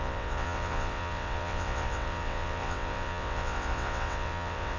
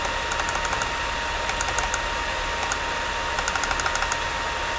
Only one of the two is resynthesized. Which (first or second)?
first